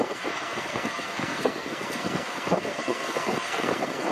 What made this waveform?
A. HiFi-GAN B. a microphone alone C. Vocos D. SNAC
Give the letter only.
D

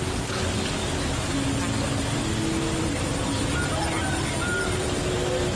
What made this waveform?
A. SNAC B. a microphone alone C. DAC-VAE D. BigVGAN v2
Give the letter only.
B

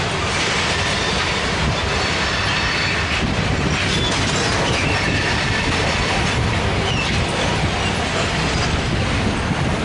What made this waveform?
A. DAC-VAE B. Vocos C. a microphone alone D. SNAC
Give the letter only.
C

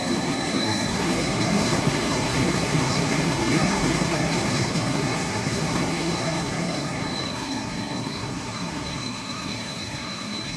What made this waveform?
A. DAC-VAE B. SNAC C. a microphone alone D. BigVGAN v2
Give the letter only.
B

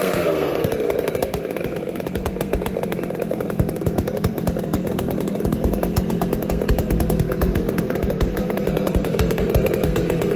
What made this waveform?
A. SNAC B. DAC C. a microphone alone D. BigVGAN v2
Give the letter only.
A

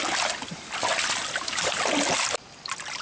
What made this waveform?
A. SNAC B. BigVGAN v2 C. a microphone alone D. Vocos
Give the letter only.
C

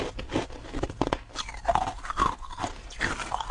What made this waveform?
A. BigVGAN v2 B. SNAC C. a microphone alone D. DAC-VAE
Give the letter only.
C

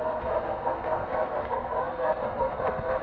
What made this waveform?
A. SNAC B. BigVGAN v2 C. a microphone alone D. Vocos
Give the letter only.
A